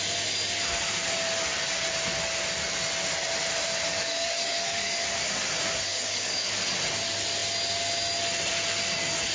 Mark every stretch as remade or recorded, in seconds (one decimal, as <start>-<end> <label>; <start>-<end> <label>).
0.0-3.9 recorded; 3.9-4.9 remade; 4.9-5.9 recorded; 5.9-6.5 remade; 6.5-9.3 recorded